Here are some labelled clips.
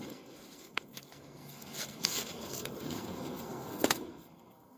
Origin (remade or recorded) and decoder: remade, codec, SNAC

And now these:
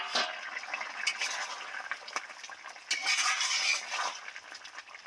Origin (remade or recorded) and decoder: recorded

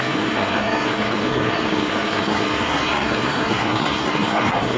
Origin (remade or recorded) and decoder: remade, codec, SNAC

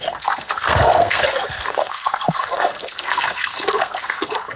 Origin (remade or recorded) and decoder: remade, codec, SNAC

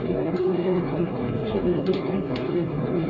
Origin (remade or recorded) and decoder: remade, codec, SNAC